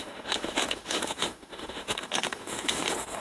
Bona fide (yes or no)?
no